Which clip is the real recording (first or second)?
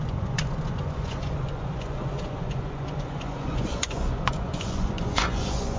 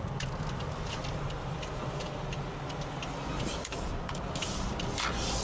second